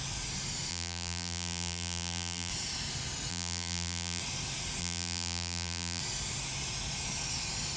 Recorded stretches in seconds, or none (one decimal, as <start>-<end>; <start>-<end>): 0.0-0.7; 2.5-3.3; 4.2-4.8; 6.0-7.8